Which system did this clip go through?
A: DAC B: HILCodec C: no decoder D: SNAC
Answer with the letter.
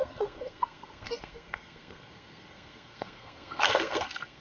D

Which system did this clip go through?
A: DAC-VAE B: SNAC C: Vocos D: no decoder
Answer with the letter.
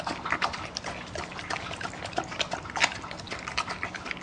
D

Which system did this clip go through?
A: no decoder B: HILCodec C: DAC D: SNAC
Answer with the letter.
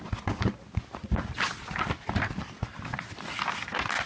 A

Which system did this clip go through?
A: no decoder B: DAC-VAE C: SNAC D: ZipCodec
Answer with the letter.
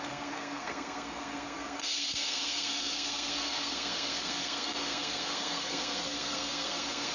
C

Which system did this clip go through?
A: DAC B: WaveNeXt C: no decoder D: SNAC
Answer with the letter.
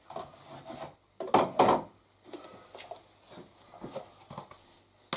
C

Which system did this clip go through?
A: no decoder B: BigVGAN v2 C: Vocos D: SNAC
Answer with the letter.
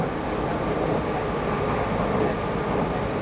A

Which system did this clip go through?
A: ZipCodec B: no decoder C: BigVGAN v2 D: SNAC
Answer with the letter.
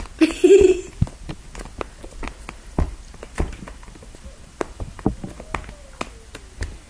B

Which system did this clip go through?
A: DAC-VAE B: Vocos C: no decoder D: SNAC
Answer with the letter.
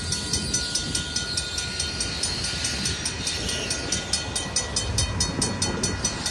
C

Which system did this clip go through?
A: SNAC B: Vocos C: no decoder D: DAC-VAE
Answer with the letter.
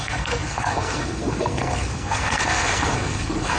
A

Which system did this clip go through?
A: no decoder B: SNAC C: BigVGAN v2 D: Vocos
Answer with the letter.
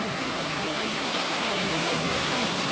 B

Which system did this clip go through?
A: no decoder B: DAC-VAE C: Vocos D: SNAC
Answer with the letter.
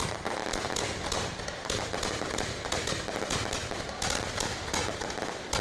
A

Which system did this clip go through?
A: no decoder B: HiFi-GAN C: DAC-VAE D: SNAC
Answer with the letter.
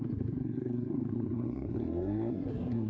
D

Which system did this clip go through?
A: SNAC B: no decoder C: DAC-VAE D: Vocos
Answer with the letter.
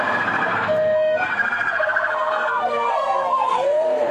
A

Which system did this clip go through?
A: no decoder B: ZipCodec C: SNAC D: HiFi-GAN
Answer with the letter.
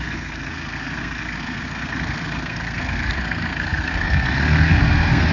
C